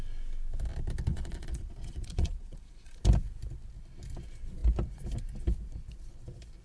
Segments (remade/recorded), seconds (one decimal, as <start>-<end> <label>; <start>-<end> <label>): 0.0-1.1 recorded; 1.1-3.0 remade; 3.0-6.6 recorded